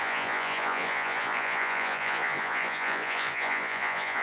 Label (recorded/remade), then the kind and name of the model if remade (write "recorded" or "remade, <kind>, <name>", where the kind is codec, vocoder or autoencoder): remade, vocoder, Vocos